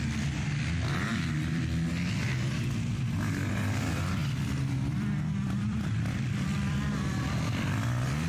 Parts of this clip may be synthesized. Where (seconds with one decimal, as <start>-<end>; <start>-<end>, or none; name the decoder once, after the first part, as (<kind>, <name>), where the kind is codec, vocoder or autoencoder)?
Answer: 4.2-6.7 (vocoder, BigVGAN v2)